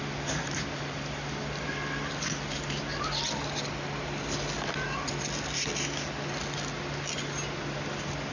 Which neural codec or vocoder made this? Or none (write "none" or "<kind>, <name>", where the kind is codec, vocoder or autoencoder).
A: none